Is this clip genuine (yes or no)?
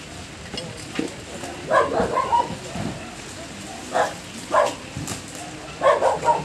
yes